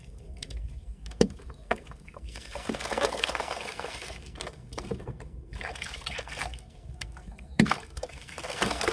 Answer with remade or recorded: remade